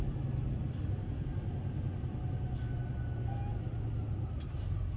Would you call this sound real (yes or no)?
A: yes